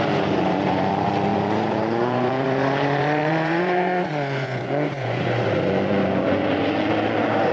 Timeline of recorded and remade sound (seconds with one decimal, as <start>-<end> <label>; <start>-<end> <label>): 0.0-7.5 remade